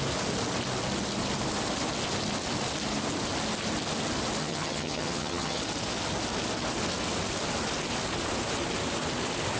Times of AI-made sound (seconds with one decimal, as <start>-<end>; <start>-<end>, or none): 4.4-5.6